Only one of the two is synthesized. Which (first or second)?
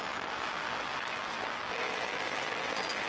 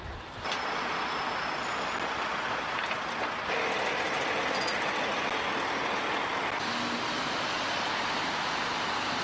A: first